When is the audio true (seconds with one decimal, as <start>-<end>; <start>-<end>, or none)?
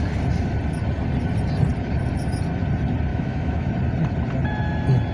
0.0-3.1; 3.7-5.1